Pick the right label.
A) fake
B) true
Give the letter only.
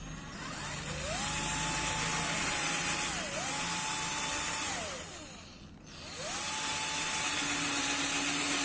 B